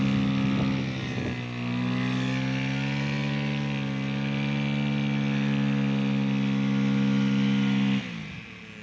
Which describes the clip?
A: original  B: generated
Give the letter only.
A